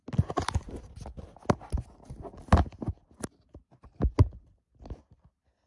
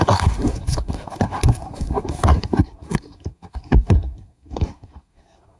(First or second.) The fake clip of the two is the second